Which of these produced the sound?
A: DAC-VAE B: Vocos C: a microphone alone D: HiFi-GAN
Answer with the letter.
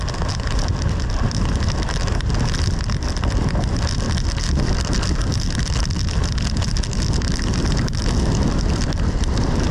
C